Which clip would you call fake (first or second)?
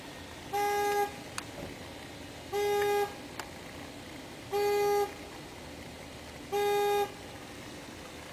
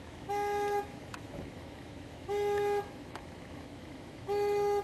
second